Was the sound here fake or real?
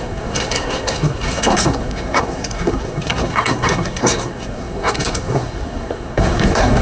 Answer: fake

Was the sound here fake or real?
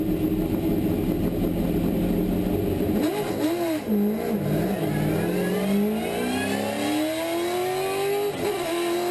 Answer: real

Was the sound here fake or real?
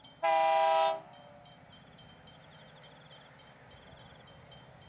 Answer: real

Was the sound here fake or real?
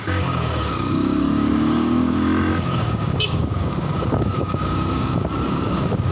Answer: fake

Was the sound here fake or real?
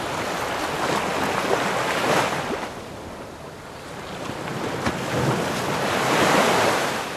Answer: real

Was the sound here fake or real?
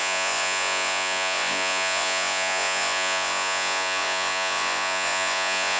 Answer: fake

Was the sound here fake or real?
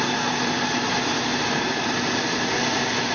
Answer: real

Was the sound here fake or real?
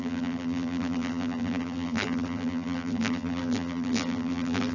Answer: fake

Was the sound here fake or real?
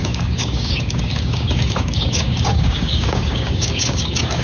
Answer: fake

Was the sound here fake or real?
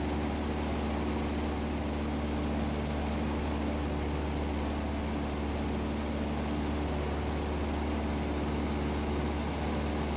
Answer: real